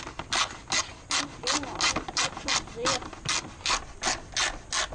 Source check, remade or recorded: recorded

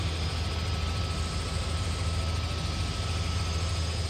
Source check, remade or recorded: recorded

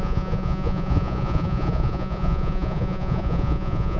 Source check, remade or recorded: remade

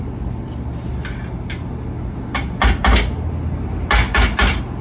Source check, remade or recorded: recorded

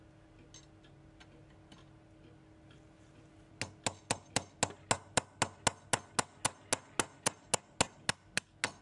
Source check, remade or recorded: recorded